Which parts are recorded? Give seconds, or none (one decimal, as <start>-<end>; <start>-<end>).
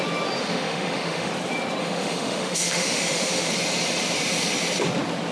0.0-0.4; 1.3-1.8; 3.5-5.3